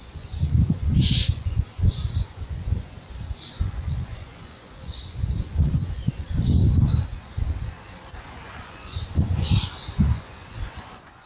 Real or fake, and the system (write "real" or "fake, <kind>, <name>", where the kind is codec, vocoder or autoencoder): fake, vocoder, Vocos